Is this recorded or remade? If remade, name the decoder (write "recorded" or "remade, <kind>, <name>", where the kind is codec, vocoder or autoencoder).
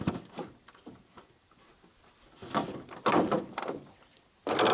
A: recorded